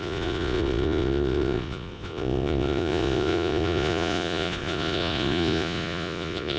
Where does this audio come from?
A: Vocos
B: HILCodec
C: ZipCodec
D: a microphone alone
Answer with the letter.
A